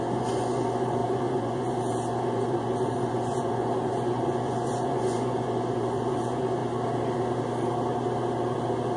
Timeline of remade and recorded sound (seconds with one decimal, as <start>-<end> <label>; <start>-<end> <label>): 0.0-6.6 remade; 6.6-9.0 recorded